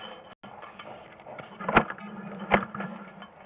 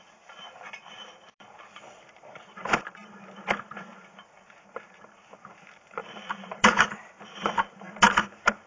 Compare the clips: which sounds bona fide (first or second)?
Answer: first